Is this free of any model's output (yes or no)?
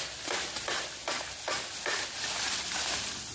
yes